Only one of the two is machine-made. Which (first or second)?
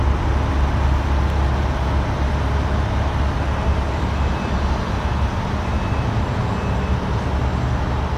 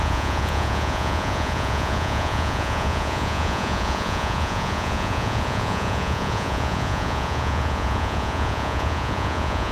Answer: second